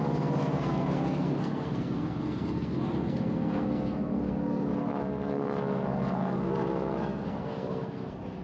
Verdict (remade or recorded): remade